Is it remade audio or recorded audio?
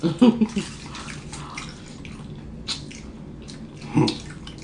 recorded